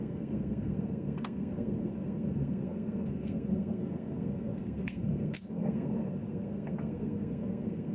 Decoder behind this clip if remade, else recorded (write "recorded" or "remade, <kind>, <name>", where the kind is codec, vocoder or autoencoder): remade, codec, SNAC